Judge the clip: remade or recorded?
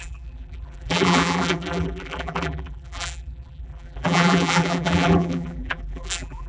remade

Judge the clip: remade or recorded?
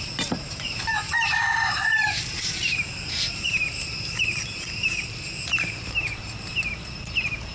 remade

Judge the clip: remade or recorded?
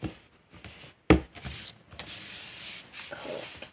recorded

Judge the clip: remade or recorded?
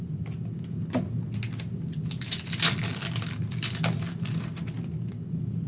recorded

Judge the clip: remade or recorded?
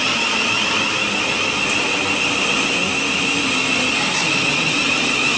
recorded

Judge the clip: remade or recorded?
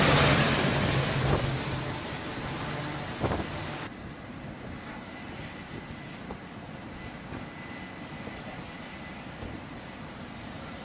recorded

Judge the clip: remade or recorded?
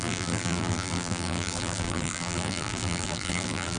remade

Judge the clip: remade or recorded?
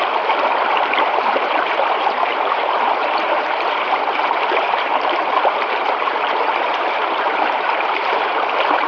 remade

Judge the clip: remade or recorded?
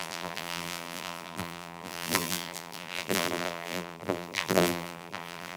remade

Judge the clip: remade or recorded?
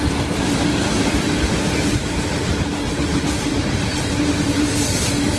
remade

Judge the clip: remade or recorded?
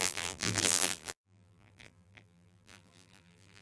remade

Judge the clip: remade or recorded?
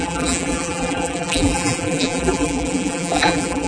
remade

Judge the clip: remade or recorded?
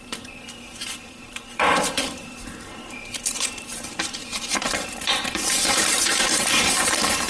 remade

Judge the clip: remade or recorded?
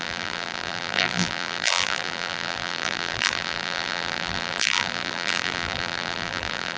remade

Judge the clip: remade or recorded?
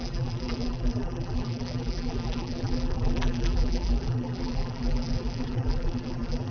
remade